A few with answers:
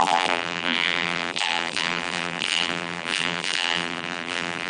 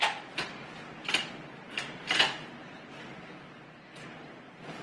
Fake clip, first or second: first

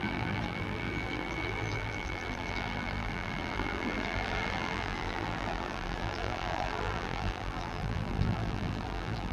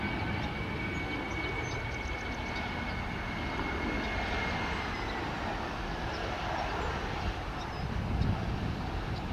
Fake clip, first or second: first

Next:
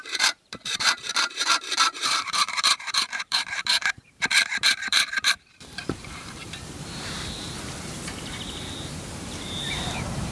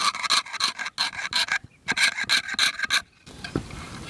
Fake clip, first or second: first